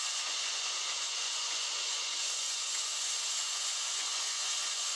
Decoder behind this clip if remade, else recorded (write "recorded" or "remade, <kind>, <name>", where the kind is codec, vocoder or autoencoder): remade, vocoder, Vocos